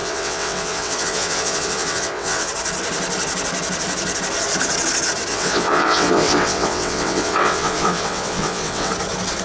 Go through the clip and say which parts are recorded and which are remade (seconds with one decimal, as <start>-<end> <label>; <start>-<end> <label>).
0.0-2.5 remade; 2.5-5.3 recorded; 5.3-8.9 remade; 8.9-9.4 recorded